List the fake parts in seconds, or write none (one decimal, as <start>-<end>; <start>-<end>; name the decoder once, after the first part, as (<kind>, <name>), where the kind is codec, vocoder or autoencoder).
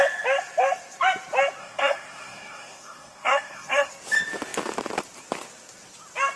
1.6-3.9 (codec, SNAC)